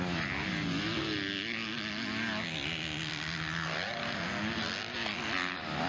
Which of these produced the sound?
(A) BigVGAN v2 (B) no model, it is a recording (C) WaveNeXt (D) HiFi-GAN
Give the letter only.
B